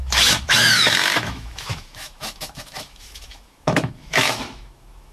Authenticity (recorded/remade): remade